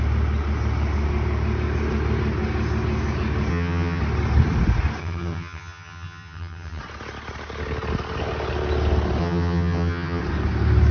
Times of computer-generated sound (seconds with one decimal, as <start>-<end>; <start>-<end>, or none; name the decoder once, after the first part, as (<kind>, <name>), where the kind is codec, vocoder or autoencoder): 3.5-4.0 (vocoder, HiFi-GAN); 5.0-6.8; 9.2-10.2